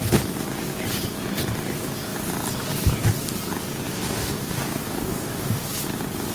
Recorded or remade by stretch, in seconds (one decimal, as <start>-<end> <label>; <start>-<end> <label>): 0.0-3.9 recorded; 3.9-5.7 remade; 5.7-6.3 recorded